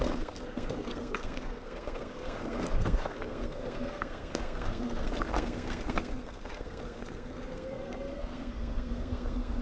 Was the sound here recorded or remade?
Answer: remade